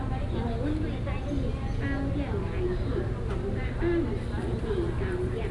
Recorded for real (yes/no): yes